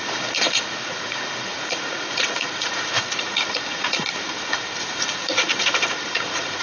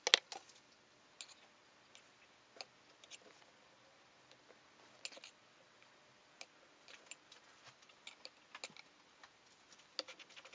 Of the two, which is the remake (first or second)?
first